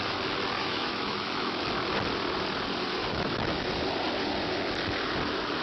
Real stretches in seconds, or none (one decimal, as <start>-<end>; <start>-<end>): 0.0-0.6; 1.6-3.0; 3.7-5.6